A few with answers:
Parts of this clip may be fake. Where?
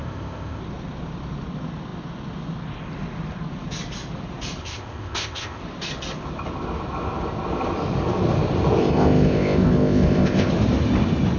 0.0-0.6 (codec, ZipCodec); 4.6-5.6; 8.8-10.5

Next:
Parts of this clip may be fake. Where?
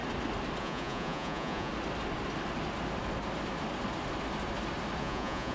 0.6-1.7 (vocoder, Vocos); 5.0-5.5